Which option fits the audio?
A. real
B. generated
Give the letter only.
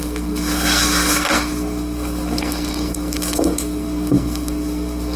B